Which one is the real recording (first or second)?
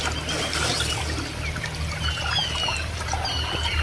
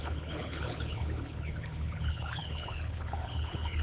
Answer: first